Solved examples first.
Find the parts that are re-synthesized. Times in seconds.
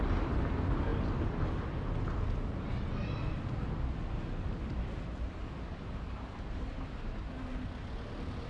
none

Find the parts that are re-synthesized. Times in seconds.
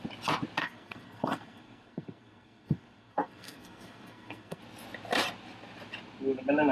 0.6-4.6 (codec, SNAC)